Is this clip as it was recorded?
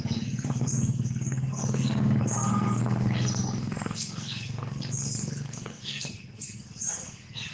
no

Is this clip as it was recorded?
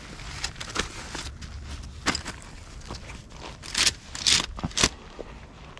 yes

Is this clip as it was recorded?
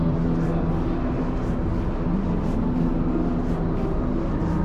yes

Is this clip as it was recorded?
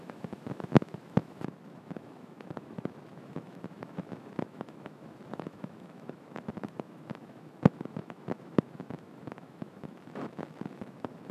no